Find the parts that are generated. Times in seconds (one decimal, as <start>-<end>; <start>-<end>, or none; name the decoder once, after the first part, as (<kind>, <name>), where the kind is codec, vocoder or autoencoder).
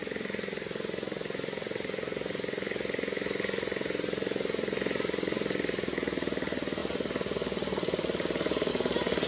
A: none